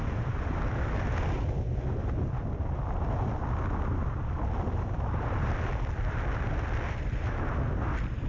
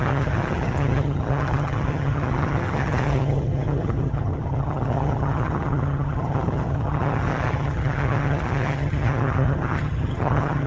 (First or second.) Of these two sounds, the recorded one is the first